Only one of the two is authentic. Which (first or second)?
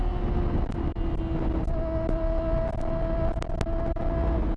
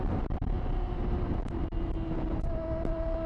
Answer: first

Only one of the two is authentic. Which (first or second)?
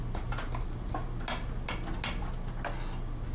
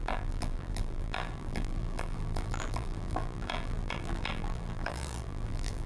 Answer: first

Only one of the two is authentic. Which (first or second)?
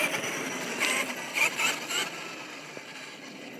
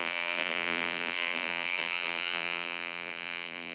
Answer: first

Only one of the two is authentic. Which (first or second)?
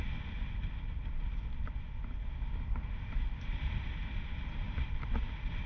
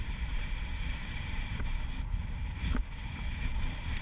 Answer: first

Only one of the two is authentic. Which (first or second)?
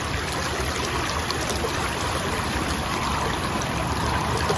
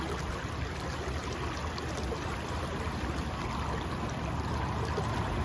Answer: second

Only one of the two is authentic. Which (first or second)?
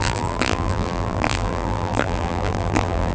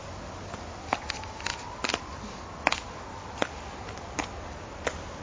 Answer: second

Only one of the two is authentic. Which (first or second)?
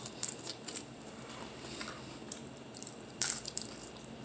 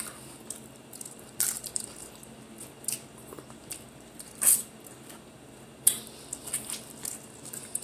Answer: second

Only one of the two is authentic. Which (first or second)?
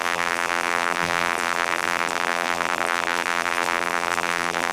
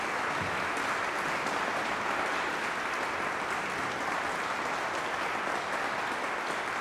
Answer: second